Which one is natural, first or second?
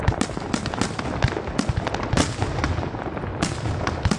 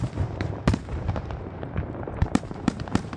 first